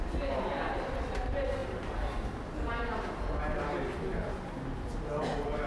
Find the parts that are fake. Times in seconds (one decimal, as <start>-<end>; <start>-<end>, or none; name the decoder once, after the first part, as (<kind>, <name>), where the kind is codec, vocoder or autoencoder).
none